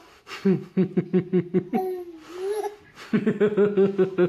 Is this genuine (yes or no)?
yes